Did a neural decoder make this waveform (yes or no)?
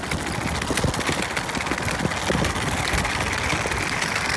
no